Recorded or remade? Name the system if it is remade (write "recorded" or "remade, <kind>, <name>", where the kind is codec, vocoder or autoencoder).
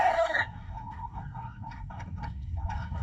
remade, codec, SNAC